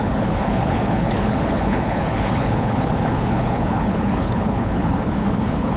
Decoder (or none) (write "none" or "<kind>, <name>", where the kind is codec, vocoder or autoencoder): codec, HILCodec